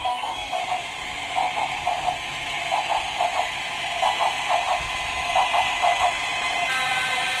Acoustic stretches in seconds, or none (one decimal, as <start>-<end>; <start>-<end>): 0.6-7.4